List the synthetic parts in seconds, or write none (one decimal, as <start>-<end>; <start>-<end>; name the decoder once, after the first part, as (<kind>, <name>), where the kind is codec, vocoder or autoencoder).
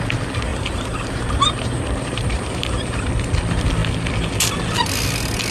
0.5-3.1 (vocoder, BigVGAN v2)